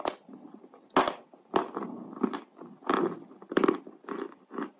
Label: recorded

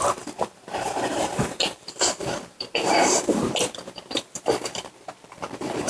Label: remade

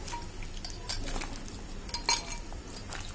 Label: recorded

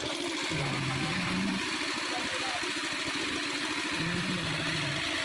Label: recorded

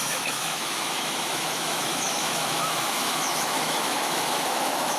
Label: remade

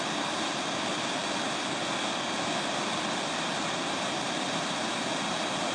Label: recorded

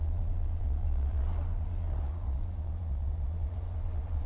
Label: remade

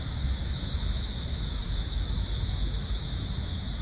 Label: remade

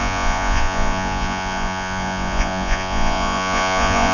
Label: remade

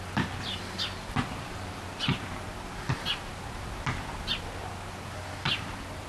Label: recorded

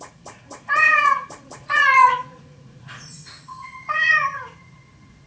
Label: remade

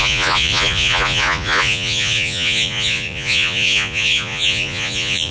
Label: remade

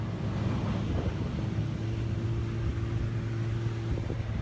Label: recorded